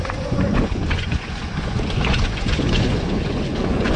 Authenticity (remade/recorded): remade